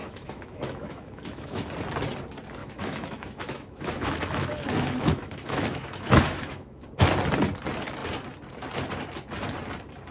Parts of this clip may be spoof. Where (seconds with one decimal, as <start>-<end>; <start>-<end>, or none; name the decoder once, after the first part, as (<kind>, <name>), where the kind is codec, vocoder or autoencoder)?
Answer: 0.0-1.7 (autoencoder, DAC-VAE); 2.6-6.8